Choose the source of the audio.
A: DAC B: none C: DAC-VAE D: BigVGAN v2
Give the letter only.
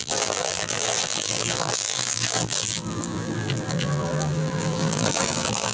D